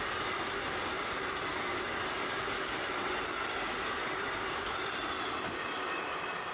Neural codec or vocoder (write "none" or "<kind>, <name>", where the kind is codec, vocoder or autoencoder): none